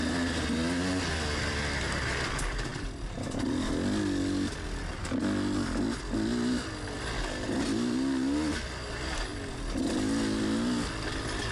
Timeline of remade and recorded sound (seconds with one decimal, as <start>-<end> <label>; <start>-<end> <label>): 0.0-11.5 recorded